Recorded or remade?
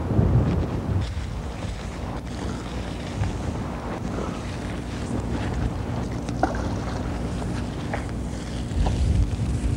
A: recorded